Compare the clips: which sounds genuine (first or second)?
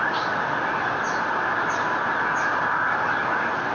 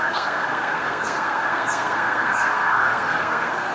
first